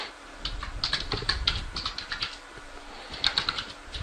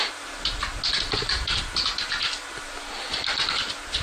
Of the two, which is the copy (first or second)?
first